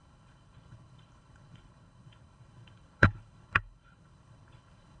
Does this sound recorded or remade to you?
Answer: remade